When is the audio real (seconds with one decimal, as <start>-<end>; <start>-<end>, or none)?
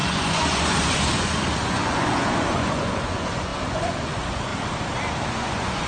4.5-5.3